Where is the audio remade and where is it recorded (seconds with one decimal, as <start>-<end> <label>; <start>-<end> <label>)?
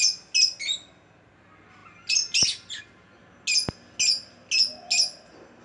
0.0-5.6 recorded